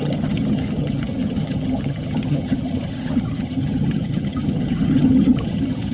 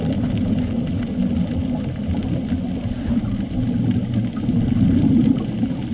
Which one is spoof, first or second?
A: first